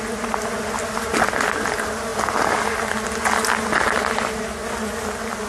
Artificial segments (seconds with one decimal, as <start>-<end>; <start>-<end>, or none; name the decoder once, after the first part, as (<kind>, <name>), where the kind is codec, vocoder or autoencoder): none